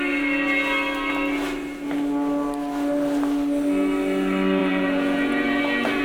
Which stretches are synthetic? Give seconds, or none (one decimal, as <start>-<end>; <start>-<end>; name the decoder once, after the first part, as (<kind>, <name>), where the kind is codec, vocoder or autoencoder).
4.6-5.6 (vocoder, Vocos)